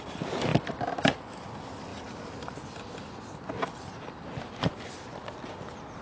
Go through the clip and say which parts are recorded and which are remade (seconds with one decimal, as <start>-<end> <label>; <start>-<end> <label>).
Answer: 0.0-6.0 recorded